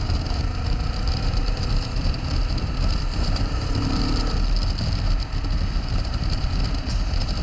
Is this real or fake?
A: fake